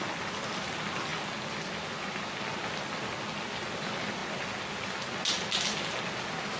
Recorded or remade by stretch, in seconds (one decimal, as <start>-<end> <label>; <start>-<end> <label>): 0.0-6.6 recorded